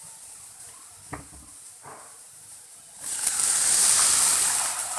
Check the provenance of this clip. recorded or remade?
remade